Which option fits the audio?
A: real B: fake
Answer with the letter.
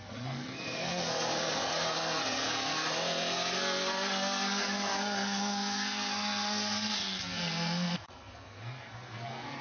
B